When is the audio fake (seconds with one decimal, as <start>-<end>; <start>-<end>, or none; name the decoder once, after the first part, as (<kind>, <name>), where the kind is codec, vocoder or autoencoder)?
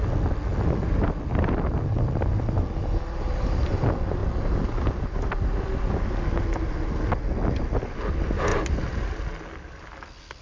none